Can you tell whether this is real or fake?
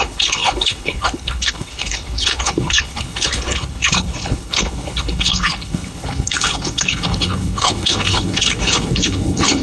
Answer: fake